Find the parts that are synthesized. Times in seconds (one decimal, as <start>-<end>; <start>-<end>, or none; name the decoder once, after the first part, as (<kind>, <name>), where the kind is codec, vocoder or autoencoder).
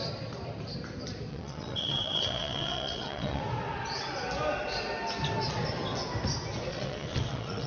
1.3-3.4 (vocoder, WaveNeXt); 6.7-7.7